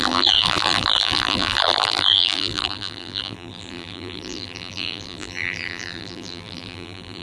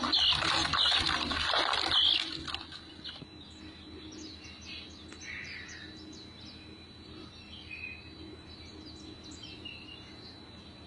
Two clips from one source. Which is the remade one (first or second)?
first